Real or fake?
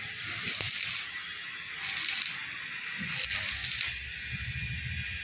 real